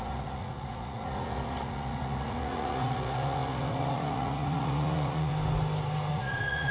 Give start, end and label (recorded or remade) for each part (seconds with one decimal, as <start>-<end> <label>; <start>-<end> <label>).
0.0-5.3 remade; 5.3-6.1 recorded; 6.1-6.7 remade